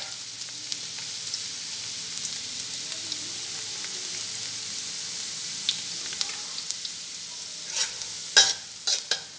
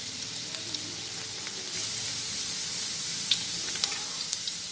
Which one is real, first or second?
first